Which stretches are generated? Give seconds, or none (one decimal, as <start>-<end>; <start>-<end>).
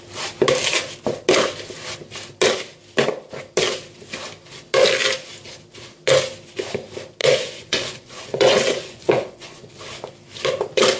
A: 7.2-9.7